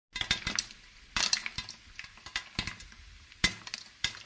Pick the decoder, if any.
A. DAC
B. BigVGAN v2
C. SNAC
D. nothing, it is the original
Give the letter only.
D